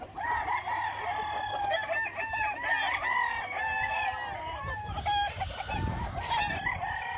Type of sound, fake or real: real